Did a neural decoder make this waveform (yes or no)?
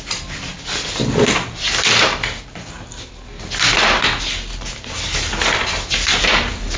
no